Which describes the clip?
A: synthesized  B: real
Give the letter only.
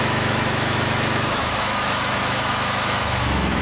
A